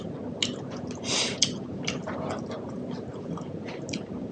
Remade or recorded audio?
recorded